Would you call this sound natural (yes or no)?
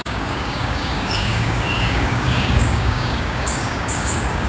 no